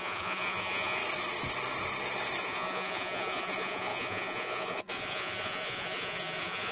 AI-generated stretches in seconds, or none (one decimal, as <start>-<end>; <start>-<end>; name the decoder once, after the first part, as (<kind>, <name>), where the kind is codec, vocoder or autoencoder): 0.0-1.0 (vocoder, Vocos); 2.4-6.7